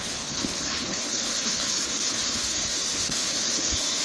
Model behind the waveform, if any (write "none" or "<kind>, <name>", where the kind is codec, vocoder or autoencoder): codec, HILCodec